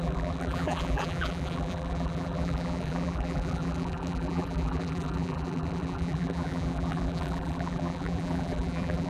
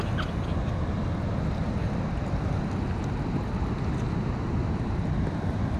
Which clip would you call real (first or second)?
second